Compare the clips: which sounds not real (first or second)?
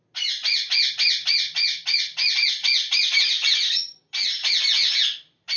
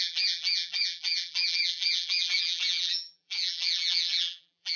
second